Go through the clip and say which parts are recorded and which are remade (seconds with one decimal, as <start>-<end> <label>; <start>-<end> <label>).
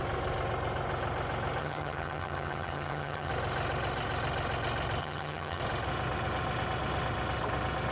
0.0-1.6 recorded; 1.6-3.3 remade; 3.3-5.0 recorded; 5.0-5.6 remade; 5.6-7.9 recorded